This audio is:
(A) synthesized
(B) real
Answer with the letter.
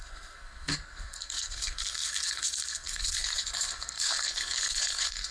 A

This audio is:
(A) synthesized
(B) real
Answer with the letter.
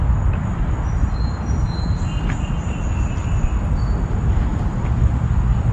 B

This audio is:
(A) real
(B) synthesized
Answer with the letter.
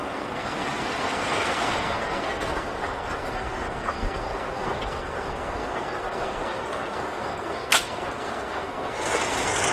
B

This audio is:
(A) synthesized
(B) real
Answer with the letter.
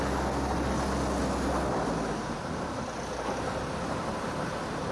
B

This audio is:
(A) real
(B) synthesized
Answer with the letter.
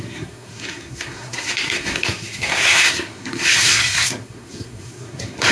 B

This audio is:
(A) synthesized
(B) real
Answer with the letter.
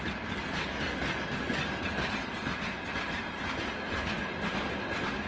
B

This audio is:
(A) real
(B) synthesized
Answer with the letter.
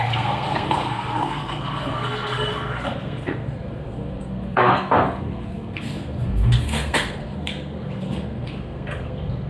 B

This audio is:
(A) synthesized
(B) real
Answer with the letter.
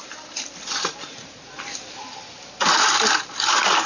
B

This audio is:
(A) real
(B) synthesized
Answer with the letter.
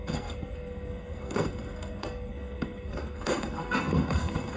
B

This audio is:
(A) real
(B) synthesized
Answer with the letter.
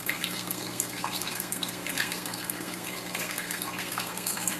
B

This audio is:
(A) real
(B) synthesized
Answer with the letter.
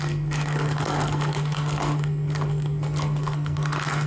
B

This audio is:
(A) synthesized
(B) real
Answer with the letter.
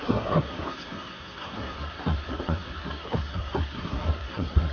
A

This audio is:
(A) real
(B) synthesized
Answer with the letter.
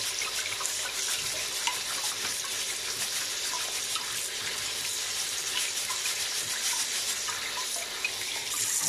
A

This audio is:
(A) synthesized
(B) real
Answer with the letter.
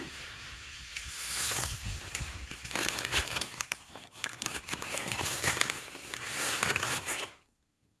A